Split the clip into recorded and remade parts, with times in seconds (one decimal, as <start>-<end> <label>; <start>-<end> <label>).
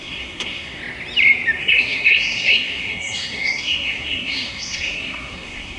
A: 0.0-0.8 remade; 0.8-1.6 recorded; 1.6-5.8 remade